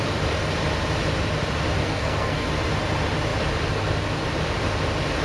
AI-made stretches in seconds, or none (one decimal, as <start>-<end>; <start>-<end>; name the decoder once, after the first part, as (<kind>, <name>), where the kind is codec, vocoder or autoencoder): 1.8-2.5 (codec, SNAC)